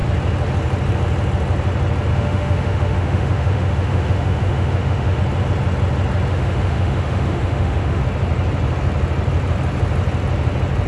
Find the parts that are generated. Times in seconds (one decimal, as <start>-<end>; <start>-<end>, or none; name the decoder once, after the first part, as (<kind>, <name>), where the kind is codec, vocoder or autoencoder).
2.1-5.2 (autoencoder, DAC-VAE); 6.3-8.0